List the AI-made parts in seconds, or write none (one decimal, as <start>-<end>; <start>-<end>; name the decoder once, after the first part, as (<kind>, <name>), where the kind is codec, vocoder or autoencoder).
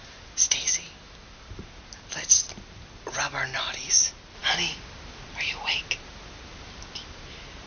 none